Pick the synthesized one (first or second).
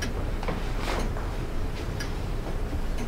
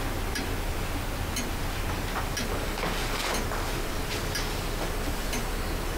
first